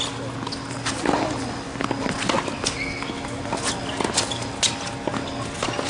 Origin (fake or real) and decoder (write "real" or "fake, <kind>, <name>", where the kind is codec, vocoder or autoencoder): real